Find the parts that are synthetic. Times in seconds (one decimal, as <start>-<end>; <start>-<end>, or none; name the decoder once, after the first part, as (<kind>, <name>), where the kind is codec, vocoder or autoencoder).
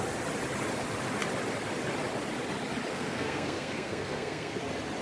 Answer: 2.9-4.6 (codec, SNAC)